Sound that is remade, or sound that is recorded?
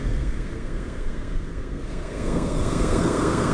remade